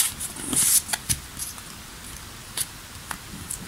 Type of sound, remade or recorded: recorded